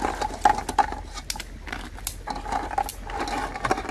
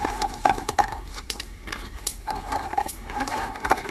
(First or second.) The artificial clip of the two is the second